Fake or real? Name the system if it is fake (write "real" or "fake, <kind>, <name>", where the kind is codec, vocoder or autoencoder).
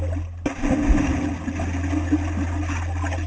real